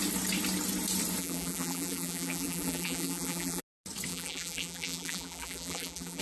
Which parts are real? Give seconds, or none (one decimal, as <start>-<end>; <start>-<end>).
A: 0.0-1.2; 3.6-4.1